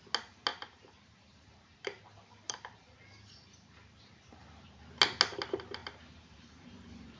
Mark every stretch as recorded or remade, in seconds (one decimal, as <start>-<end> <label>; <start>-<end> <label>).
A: 0.0-0.5 recorded; 0.5-4.8 remade; 4.8-5.8 recorded; 5.8-6.7 remade; 6.7-7.2 recorded

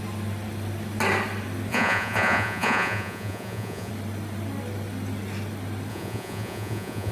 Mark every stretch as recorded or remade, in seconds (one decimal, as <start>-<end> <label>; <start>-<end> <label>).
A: 0.0-1.7 recorded; 1.7-3.9 remade; 3.9-5.9 recorded; 5.9-7.1 remade

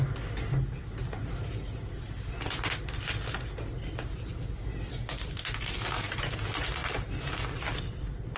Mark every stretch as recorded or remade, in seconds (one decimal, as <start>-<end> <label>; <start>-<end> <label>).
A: 0.0-6.8 recorded; 6.8-7.8 remade; 7.8-8.4 recorded

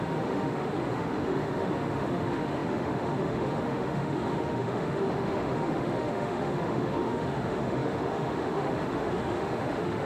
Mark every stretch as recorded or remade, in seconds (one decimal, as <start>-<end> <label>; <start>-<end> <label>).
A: 0.0-10.1 remade

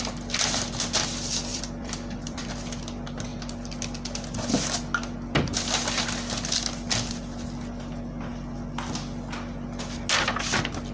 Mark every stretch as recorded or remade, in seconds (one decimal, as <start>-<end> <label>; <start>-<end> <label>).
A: 0.0-1.5 recorded; 1.5-2.4 remade; 2.4-8.3 recorded; 8.3-8.9 remade; 8.9-10.9 recorded

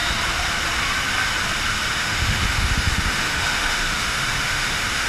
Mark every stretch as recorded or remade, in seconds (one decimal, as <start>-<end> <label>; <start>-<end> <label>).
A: 0.0-1.9 recorded; 1.9-5.1 remade

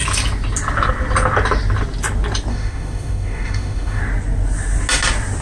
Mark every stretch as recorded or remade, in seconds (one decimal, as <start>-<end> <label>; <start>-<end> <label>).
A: 0.0-2.5 recorded; 2.5-4.0 remade; 4.0-5.4 recorded